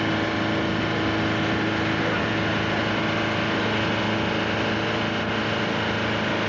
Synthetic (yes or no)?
no